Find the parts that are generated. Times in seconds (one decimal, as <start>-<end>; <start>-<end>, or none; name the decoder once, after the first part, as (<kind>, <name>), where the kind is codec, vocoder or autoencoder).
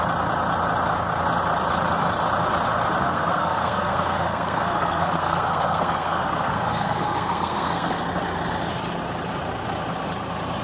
3.0-8.0 (codec, SNAC)